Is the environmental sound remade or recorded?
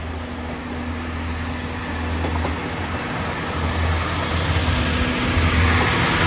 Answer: recorded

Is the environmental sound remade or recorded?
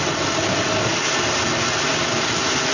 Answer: recorded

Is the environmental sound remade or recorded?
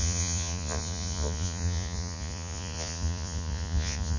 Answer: remade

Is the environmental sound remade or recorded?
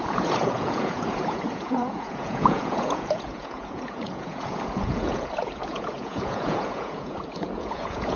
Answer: remade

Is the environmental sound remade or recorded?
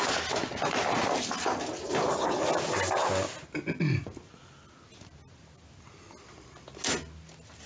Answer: recorded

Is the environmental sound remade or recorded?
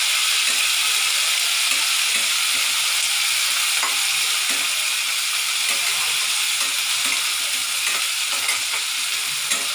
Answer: recorded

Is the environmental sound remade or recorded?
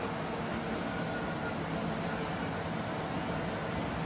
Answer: recorded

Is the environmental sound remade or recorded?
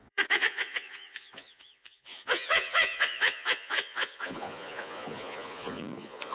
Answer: remade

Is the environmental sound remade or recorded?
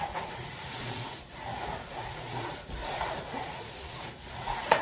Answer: remade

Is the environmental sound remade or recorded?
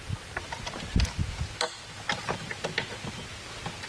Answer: recorded